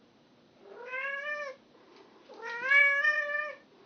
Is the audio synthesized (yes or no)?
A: no